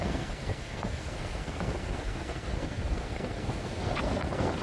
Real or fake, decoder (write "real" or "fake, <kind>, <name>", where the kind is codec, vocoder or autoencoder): fake, codec, SNAC